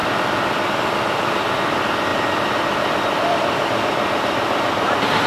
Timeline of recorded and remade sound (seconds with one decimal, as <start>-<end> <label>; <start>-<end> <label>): 0.0-0.7 remade; 0.7-2.1 recorded; 2.1-5.3 remade